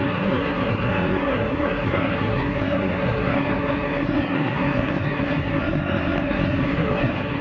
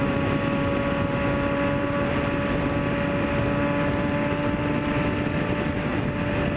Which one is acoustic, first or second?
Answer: second